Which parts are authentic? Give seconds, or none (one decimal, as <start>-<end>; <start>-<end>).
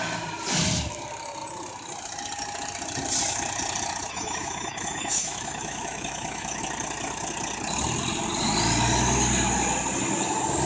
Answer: 0.0-4.1; 6.6-10.7